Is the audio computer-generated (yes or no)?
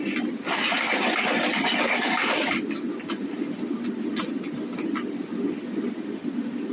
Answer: no